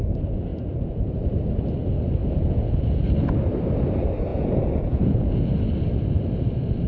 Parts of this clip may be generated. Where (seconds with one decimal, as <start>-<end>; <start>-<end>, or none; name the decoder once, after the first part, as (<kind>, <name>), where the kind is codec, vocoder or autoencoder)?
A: 0.5-1.2 (vocoder, Vocos); 2.2-3.0; 4.3-5.5